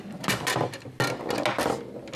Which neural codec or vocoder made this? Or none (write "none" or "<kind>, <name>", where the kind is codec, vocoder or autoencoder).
none